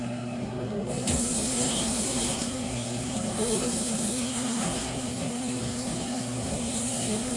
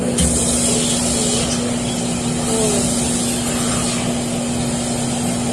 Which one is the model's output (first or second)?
first